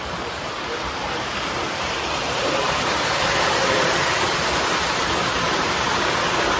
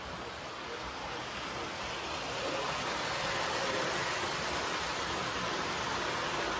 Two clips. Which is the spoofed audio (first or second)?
first